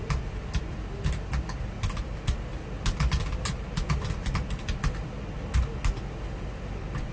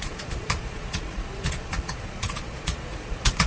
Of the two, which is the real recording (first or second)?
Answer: first